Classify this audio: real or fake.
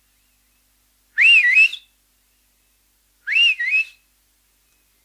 real